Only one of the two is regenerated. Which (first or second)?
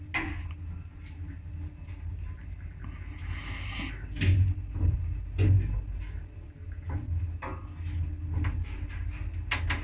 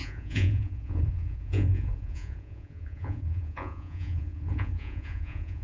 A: second